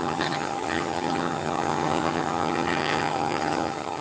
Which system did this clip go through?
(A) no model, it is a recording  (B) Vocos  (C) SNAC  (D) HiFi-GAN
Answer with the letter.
D